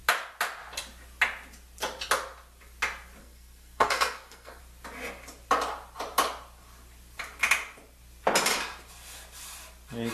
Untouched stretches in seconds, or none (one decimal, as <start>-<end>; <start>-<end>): 0.0-3.2; 4.6-10.1